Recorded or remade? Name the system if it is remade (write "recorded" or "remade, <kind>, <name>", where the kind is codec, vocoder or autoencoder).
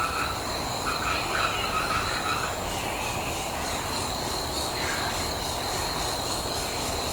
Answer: remade, codec, DAC